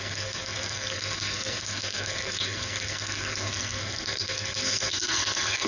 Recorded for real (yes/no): no